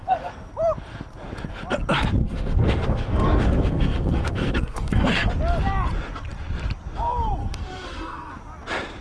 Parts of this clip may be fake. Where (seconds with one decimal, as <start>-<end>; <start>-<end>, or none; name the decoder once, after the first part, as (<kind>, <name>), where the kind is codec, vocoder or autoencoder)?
0.0-0.5 (codec, SNAC); 2.2-5.3; 7.4-8.3